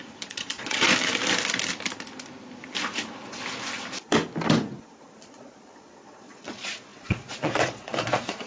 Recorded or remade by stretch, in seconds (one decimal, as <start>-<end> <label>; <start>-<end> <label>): 0.0-0.9 remade; 0.9-5.2 recorded; 5.2-8.5 remade